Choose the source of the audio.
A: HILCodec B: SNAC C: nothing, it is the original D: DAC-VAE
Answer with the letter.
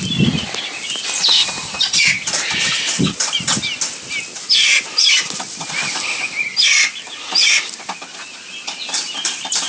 C